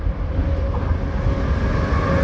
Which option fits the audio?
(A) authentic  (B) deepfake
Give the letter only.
A